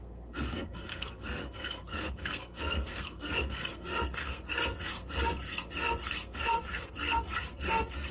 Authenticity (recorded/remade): remade